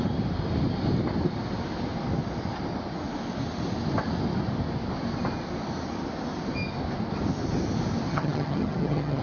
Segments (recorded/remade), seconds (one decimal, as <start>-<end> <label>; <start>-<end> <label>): 0.0-8.1 recorded; 8.1-9.2 remade